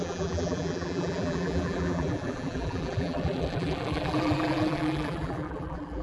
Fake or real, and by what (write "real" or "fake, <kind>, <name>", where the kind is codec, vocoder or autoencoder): fake, vocoder, BigVGAN v2